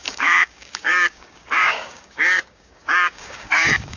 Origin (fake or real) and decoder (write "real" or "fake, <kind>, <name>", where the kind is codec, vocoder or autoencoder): fake, codec, DAC